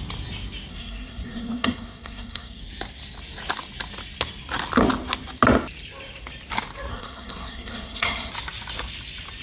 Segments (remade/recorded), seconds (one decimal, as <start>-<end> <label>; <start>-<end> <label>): 0.0-0.7 recorded; 0.7-2.6 remade; 2.6-6.9 recorded; 6.9-8.3 remade; 8.3-9.4 recorded